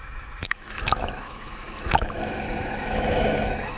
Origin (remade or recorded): remade